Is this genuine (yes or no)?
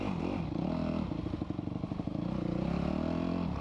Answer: yes